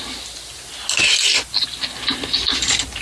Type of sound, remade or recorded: recorded